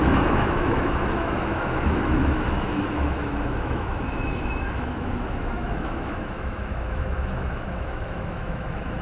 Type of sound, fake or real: fake